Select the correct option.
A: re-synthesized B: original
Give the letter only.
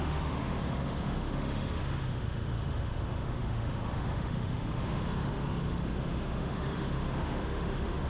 A